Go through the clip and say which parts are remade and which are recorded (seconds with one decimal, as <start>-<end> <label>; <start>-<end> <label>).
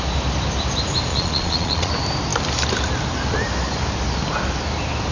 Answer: 0.0-1.1 recorded; 1.1-1.9 remade; 1.9-5.1 recorded